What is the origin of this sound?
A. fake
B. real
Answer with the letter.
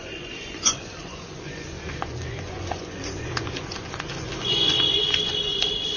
A